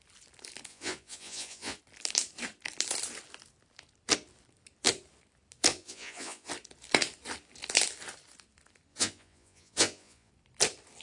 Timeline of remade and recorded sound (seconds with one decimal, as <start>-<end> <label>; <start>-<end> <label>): 0.0-0.7 recorded; 0.7-1.8 remade; 1.8-5.7 recorded; 5.7-6.5 remade; 6.5-8.9 recorded; 8.9-10.3 remade; 10.3-11.0 recorded